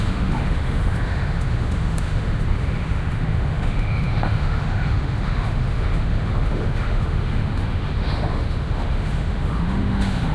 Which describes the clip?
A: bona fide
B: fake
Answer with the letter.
B